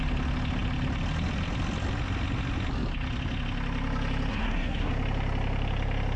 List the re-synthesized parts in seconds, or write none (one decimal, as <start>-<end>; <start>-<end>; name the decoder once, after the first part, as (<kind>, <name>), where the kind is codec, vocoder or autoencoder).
4.3-4.9 (codec, SNAC)